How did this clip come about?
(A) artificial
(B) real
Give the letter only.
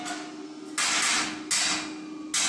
B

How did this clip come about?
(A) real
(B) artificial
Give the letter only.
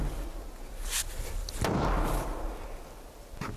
A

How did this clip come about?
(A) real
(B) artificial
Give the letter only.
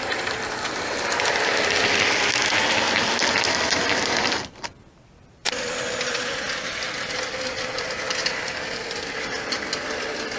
B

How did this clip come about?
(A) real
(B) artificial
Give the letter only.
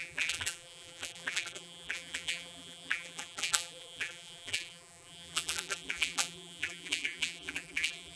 B